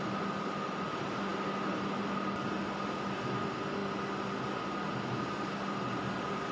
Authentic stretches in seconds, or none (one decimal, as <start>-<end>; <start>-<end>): 0.0-6.5

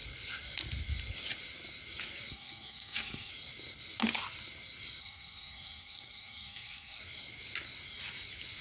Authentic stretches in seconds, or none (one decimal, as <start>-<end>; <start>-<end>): 0.0-2.3; 3.3-5.0; 7.0-8.6

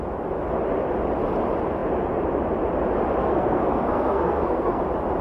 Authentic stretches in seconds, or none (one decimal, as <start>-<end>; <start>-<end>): 0.0-3.2; 4.8-5.2

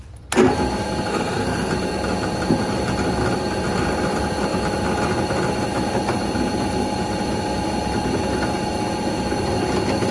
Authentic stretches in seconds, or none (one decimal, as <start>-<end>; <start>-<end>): 0.0-1.1; 1.7-10.1

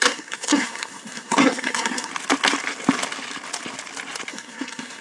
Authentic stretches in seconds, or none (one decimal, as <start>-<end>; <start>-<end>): 2.1-4.3

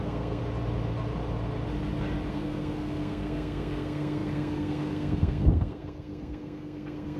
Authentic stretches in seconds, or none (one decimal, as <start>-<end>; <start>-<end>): 0.4-2.3

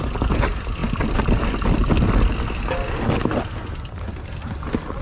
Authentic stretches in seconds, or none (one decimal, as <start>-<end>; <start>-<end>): 0.0-5.0